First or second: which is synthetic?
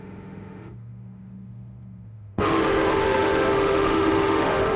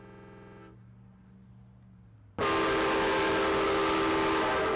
first